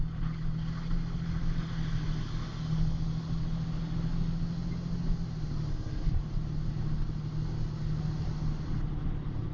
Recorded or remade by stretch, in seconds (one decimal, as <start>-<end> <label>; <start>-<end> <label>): 0.0-5.7 recorded; 5.7-6.2 remade; 6.2-9.5 recorded